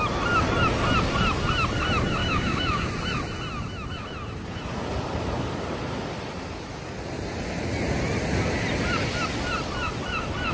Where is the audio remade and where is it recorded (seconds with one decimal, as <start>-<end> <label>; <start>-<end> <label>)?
0.0-2.2 recorded; 2.2-2.9 remade; 2.9-10.5 recorded

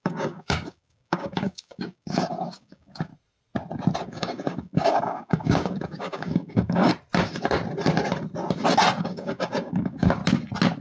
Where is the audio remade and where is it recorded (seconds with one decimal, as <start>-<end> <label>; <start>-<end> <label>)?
0.0-3.1 remade; 3.1-4.0 recorded; 4.0-6.9 remade; 6.9-9.0 recorded; 9.0-10.2 remade; 10.2-10.8 recorded